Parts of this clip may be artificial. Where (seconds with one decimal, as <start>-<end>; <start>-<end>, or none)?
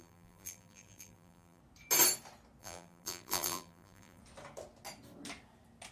0.0-1.6; 2.6-4.2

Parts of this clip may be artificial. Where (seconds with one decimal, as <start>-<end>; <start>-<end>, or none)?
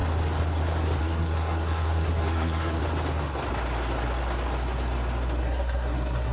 1.0-2.8; 5.4-6.3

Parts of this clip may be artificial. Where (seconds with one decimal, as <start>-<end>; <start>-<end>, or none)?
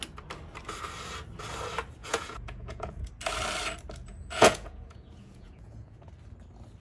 2.0-3.1; 4.1-6.1